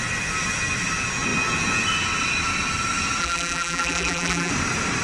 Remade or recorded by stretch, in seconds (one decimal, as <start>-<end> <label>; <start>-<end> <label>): 0.0-3.2 recorded; 3.2-4.5 remade; 4.5-5.0 recorded